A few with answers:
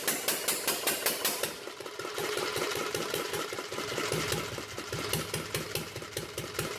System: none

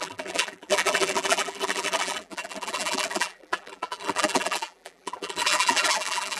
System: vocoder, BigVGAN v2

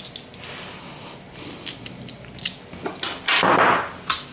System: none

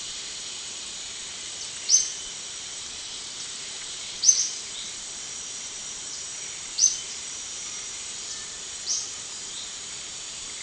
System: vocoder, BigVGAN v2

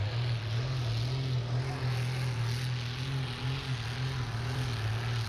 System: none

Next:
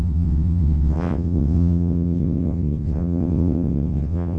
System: vocoder, WaveNeXt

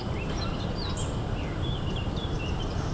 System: vocoder, BigVGAN v2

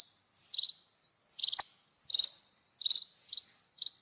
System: none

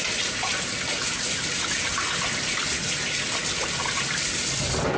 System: none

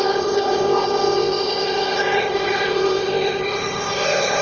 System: codec, ZipCodec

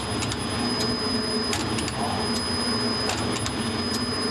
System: none